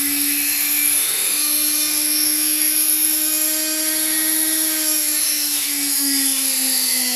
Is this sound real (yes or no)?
no